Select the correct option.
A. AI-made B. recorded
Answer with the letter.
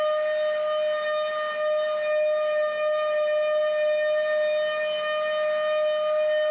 B